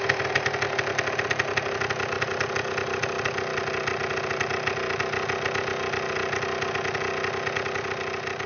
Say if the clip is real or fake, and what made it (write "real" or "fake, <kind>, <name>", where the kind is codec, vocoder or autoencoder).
real